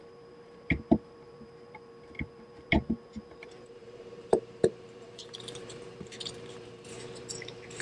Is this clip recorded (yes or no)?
no